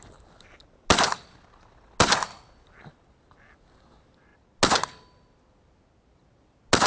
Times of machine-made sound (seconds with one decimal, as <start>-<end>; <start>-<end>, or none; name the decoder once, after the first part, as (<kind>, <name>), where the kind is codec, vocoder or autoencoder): none